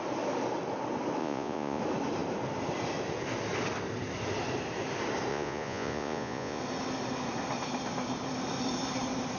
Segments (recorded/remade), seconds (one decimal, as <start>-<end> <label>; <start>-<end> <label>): 0.0-1.2 recorded; 1.2-1.8 remade; 1.8-5.3 recorded; 5.3-6.6 remade; 6.6-9.4 recorded